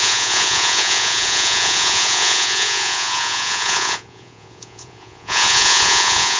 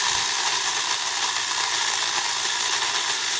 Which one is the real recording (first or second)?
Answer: second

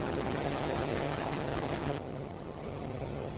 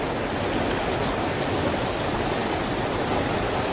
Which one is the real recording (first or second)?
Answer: second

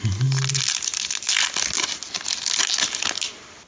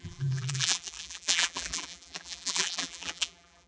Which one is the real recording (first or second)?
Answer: first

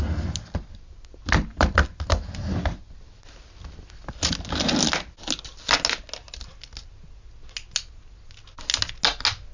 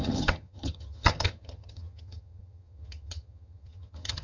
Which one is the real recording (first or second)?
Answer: first